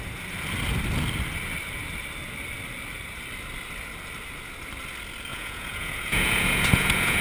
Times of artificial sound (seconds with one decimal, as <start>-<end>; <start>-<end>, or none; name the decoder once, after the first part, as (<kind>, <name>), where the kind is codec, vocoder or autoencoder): 5.3-7.2 (vocoder, Vocos)